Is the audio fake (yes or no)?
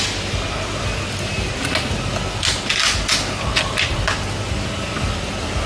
no